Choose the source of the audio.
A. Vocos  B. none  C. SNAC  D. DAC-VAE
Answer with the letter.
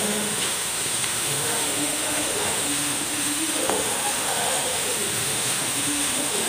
D